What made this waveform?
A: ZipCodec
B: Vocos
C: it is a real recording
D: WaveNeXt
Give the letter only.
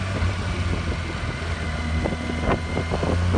C